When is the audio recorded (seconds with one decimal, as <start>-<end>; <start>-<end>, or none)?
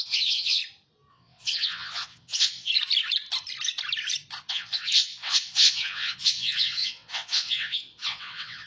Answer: 0.6-1.1; 2.7-4.5